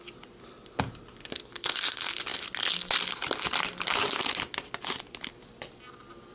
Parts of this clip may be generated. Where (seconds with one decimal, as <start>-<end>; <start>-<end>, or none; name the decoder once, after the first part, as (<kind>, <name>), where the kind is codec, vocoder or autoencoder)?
0.0-2.3 (vocoder, BigVGAN v2); 5.3-6.3